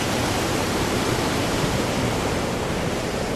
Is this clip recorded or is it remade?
remade